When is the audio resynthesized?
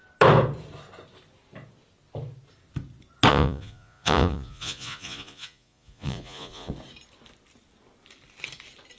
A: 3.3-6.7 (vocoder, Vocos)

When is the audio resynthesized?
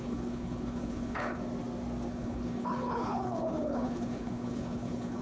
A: 0.0-1.4 (codec, HILCodec); 2.1-5.2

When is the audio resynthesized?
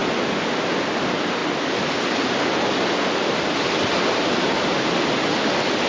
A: none